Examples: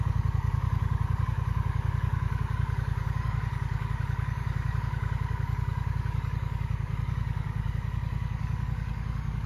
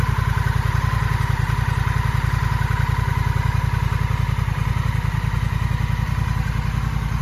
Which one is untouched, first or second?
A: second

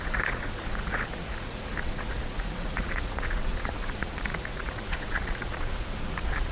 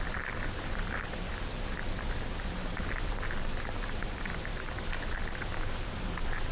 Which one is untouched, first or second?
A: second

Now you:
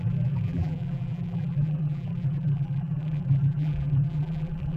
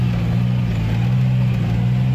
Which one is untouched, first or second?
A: second